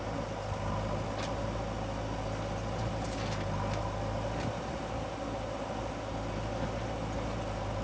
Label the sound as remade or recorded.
recorded